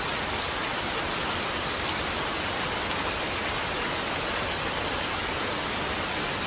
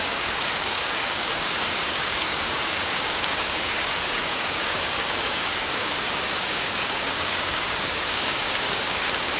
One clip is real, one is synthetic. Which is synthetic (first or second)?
second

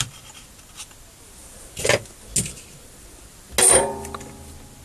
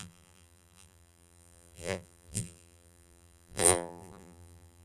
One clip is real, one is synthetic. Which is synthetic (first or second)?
second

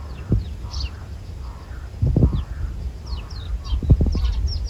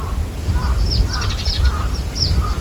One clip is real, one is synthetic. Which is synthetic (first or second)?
second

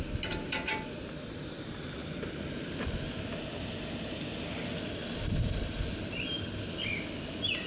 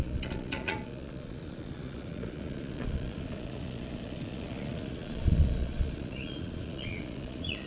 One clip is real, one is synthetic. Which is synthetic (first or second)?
second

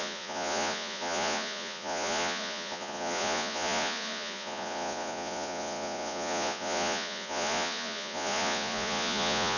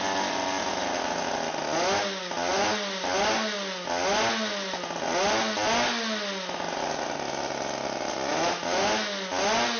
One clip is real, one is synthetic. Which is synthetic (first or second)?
first